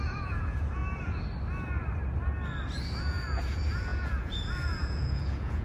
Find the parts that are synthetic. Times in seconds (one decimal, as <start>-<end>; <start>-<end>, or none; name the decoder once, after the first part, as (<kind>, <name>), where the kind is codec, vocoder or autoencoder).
0.0-0.8 (vocoder, Vocos); 3.0-5.6